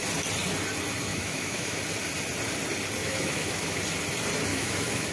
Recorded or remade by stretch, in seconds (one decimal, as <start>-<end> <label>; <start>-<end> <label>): 0.0-1.1 recorded; 1.1-1.8 remade; 1.8-3.0 recorded; 3.0-3.8 remade; 3.8-4.5 recorded; 4.5-5.1 remade